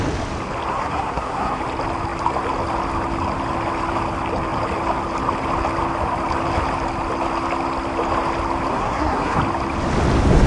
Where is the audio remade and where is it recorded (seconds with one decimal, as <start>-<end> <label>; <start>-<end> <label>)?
0.0-0.7 recorded; 0.7-1.6 remade; 1.6-8.7 recorded; 8.7-9.4 remade; 9.4-10.5 recorded